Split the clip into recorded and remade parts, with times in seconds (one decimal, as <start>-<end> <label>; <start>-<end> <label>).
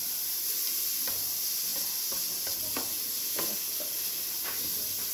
0.0-5.1 recorded